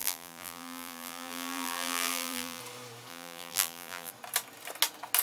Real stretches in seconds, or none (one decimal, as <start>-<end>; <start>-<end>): 2.6-3.1; 4.1-5.2